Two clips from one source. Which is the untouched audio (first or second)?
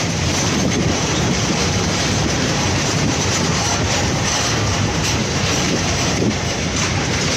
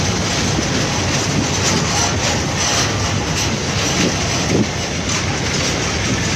second